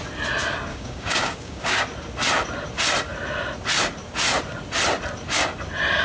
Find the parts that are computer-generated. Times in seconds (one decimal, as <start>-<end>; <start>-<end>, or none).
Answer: 0.7-1.8